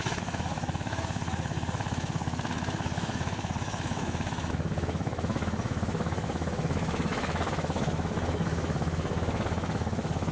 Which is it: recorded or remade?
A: remade